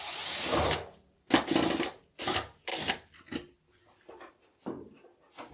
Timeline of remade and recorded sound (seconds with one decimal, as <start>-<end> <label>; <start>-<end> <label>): 0.0-5.5 recorded